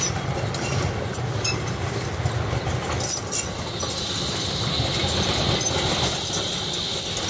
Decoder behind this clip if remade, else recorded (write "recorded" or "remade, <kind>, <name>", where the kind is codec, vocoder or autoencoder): recorded